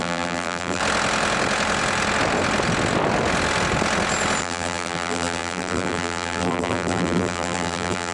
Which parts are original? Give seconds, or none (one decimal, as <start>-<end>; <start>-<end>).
0.8-4.4